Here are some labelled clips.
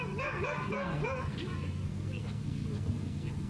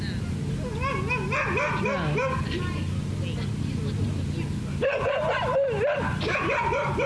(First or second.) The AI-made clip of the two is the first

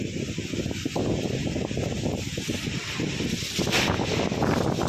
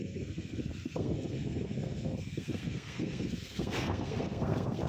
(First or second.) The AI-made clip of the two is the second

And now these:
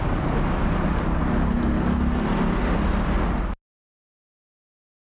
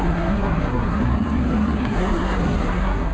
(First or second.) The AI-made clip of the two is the second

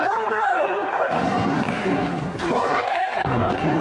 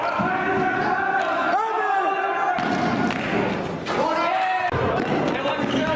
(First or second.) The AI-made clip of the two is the first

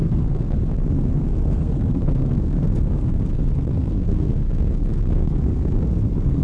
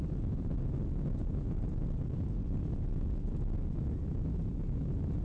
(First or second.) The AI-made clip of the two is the first